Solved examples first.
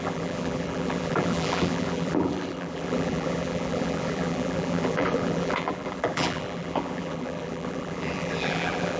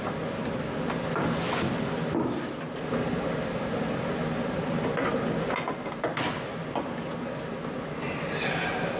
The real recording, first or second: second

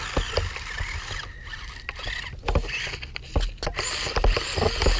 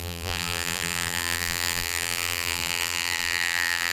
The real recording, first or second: first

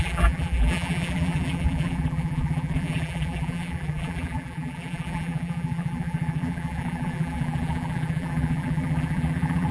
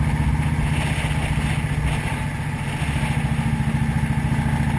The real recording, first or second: second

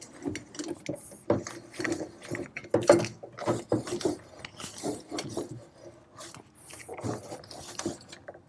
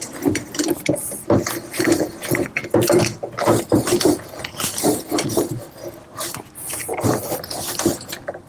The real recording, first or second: first